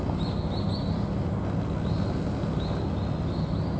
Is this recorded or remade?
recorded